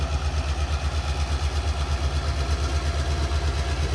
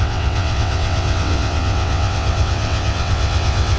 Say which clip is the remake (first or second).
second